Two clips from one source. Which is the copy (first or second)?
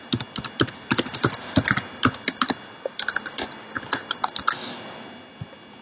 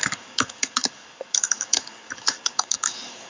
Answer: second